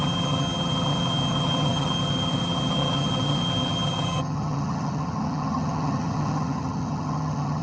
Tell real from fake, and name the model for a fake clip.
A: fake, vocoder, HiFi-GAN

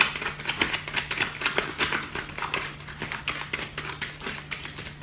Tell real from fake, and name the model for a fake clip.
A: real